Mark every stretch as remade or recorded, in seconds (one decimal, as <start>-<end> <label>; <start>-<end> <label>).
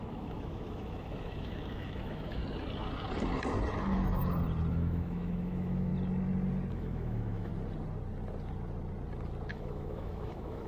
0.0-2.4 remade; 2.4-3.8 recorded; 3.8-4.2 remade; 4.2-4.7 recorded; 4.7-5.9 remade; 5.9-6.7 recorded; 6.7-7.5 remade; 7.5-9.5 recorded; 9.5-10.7 remade